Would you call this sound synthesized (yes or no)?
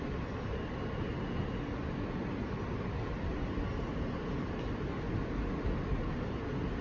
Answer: no